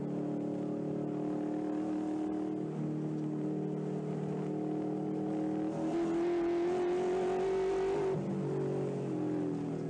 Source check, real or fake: real